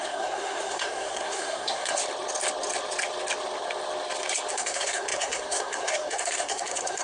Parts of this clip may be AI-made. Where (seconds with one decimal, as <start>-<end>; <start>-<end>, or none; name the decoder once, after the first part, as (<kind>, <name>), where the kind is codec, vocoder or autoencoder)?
0.0-2.0 (codec, SNAC); 4.5-7.0